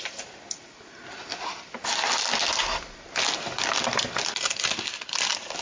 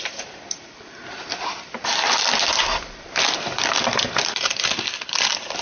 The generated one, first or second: second